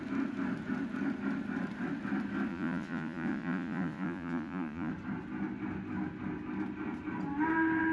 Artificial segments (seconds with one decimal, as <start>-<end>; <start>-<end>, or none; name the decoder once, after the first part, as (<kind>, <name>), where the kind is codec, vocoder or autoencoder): 2.5-4.9 (vocoder, Vocos)